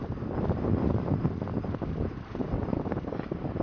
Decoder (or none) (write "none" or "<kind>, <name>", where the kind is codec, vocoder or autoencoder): none